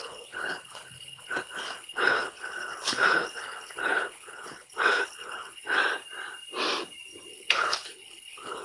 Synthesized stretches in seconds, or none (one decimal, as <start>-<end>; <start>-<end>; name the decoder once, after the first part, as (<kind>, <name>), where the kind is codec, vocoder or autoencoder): 0.0-5.8 (codec, HILCodec); 7.3-8.6